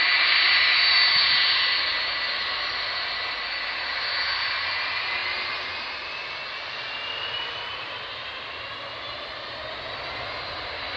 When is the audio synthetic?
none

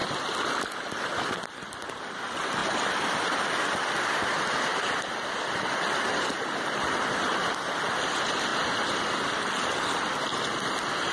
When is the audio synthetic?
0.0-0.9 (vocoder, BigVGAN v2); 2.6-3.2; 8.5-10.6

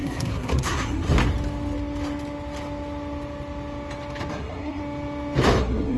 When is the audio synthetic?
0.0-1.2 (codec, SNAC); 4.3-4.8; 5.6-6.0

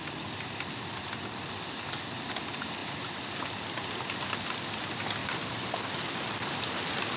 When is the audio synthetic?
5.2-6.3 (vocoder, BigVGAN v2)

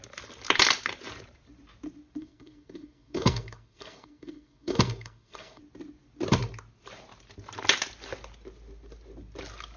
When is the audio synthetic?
2.2-5.6 (codec, SNAC)

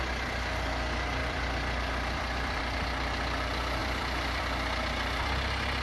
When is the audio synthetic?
1.2-2.6 (vocoder, BigVGAN v2); 3.8-4.4